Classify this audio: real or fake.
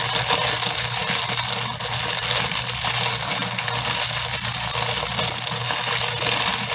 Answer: real